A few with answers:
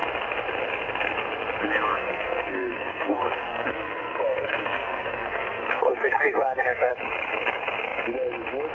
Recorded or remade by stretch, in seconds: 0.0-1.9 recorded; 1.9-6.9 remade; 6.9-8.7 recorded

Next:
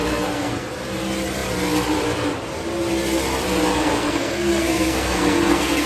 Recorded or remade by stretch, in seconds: 0.0-0.7 remade; 0.7-3.7 recorded; 3.7-5.9 remade